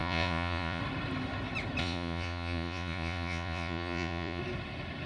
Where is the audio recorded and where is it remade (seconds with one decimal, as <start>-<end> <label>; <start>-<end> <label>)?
0.0-0.8 remade; 0.8-1.8 recorded; 1.8-4.4 remade; 4.4-5.1 recorded